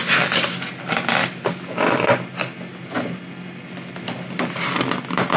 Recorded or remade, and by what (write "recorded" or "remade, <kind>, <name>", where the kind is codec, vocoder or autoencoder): recorded